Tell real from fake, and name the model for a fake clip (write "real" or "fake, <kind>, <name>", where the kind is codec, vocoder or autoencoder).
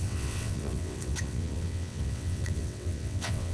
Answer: fake, vocoder, WaveNeXt